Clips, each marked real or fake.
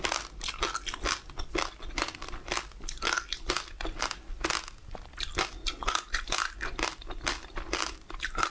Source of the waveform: real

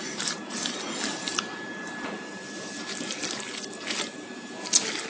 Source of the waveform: real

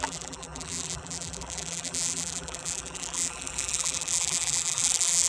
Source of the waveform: fake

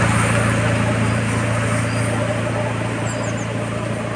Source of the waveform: real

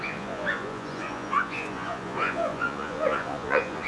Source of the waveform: fake